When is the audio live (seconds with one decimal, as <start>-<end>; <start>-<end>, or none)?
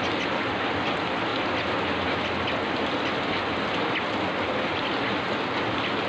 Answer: 0.0-6.1